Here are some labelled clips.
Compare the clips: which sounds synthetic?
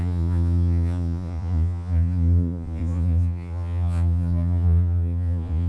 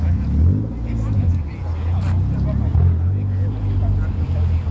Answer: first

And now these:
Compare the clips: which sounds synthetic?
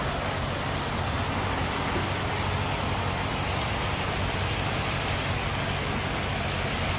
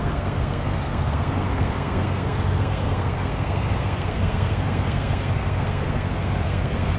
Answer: second